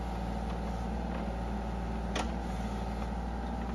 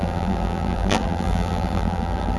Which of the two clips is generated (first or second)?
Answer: second